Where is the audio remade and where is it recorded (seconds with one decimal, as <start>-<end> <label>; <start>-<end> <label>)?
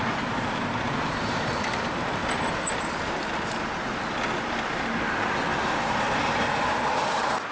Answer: 0.0-2.2 remade; 2.2-6.7 recorded; 6.7-7.5 remade